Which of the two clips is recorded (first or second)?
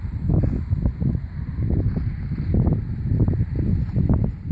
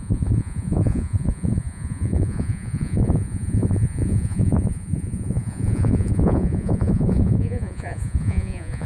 first